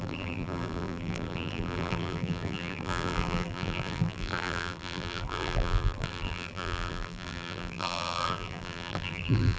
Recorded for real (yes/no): no